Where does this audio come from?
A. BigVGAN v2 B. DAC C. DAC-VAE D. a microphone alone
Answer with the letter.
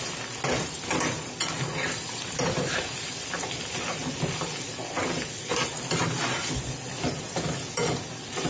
D